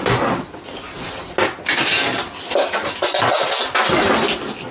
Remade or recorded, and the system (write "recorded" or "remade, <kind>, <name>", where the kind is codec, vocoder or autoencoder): recorded